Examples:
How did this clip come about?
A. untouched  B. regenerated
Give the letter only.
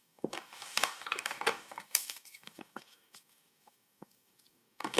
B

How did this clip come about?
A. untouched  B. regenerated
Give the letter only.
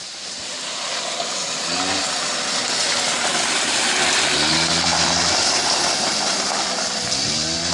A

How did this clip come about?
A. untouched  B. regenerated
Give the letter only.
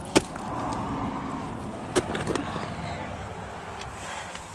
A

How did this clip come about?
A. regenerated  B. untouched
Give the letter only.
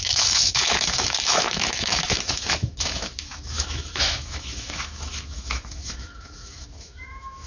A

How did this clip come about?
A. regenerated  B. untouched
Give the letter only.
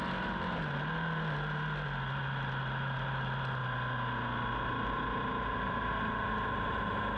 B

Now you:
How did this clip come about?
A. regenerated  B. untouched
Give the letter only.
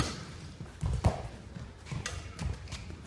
B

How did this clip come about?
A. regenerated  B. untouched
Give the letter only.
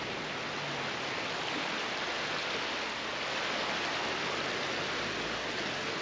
B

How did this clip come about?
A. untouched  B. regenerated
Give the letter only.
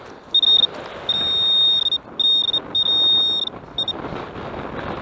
A